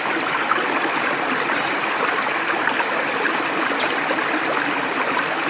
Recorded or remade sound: remade